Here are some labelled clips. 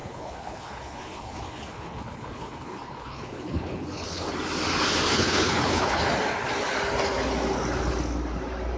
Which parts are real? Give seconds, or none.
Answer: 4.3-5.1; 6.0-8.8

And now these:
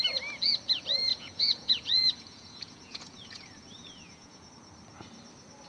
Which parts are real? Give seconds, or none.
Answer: 0.0-1.1; 4.5-5.7

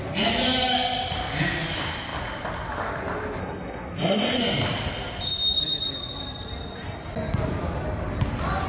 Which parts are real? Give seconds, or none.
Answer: 0.0-3.4; 4.4-8.7